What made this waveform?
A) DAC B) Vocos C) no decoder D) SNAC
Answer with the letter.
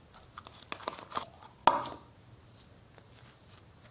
C